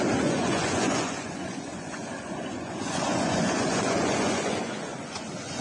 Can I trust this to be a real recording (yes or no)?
no